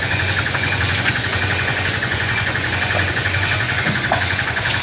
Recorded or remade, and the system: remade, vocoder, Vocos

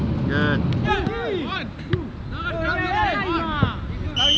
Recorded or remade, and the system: recorded